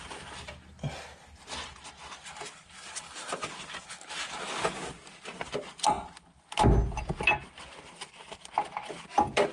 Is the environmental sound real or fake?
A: real